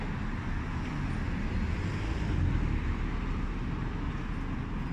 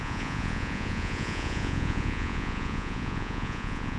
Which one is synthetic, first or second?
second